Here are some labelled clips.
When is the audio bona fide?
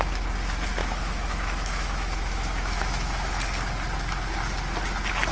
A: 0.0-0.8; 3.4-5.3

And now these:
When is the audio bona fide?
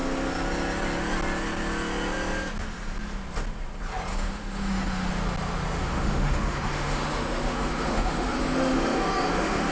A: 0.0-4.1; 5.1-5.8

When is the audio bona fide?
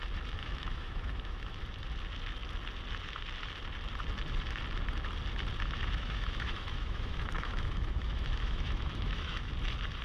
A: 0.0-0.4; 1.6-5.6; 9.5-10.0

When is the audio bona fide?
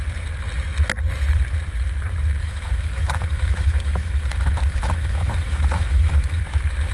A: 0.0-2.4; 6.4-6.9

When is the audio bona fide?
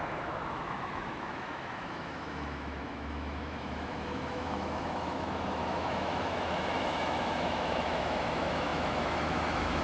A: none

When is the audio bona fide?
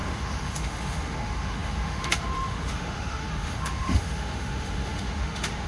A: none